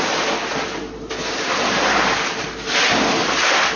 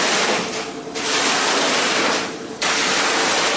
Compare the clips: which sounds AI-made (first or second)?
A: second